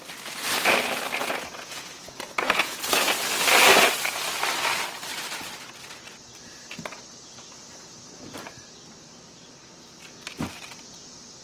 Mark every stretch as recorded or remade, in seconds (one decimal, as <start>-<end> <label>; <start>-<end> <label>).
0.0-1.2 recorded; 1.2-3.1 remade; 3.1-11.4 recorded